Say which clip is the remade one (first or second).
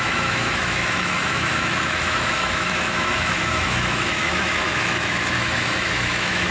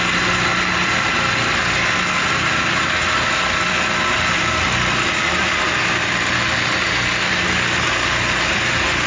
first